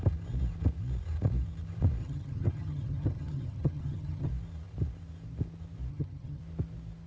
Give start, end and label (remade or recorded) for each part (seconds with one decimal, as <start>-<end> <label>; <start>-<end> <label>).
0.0-2.0 recorded; 2.0-4.3 remade; 4.3-5.9 recorded; 5.9-6.4 remade; 6.4-7.1 recorded